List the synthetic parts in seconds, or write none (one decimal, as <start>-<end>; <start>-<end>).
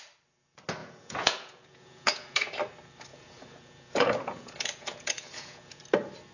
0.8-2.5; 3.1-5.8